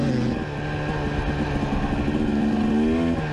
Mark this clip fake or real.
real